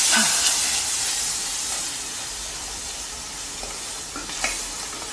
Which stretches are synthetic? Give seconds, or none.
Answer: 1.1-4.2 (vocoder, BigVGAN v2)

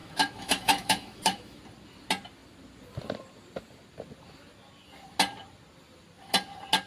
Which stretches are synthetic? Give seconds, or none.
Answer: 0.0-1.6 (autoencoder, DAC-VAE)

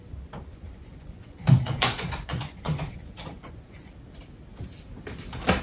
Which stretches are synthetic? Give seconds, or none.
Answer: 0.5-3.9 (vocoder, Vocos)

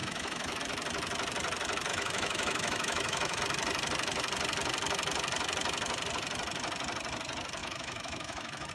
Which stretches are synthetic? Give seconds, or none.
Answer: 0.0-0.6 (autoencoder, DAC-VAE); 1.9-3.4; 7.6-8.7

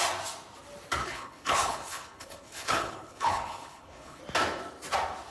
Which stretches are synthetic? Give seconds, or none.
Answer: 1.0-4.2 (codec, HILCodec)

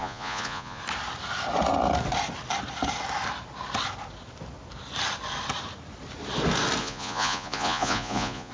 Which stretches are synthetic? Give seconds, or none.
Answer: 0.0-0.8 (vocoder, Vocos); 6.8-8.5